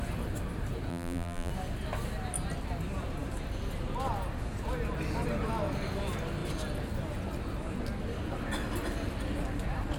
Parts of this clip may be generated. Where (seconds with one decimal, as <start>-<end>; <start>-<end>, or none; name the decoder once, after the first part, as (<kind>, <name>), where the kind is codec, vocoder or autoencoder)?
0.9-1.5 (vocoder, BigVGAN v2)